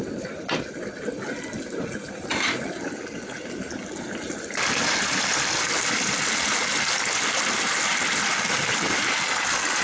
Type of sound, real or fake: real